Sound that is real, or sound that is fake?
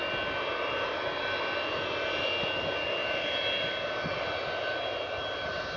real